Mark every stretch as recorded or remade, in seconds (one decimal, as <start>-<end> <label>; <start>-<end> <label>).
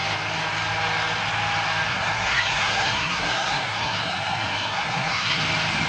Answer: 0.0-1.9 recorded; 1.9-5.4 remade; 5.4-5.9 recorded